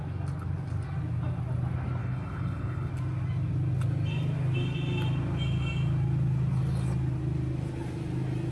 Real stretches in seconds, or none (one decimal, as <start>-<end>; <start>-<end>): 0.0-2.0; 2.9-8.5